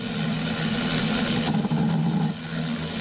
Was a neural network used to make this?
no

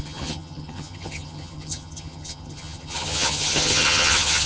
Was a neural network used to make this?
yes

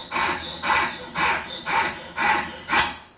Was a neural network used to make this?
no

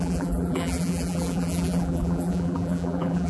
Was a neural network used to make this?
yes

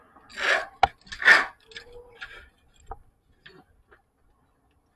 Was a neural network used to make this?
no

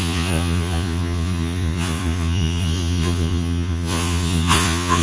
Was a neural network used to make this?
yes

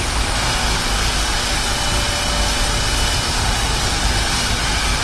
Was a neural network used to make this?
no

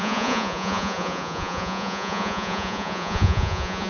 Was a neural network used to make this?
yes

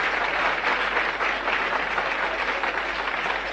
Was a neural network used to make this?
no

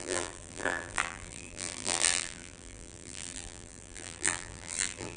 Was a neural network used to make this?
yes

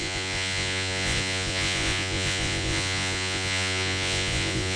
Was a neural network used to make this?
yes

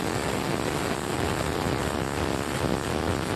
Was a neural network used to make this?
no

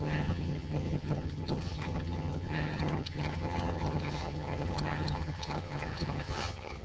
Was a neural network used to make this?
yes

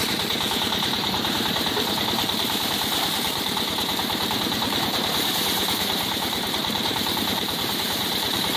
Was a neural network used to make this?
yes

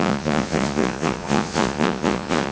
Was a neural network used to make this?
yes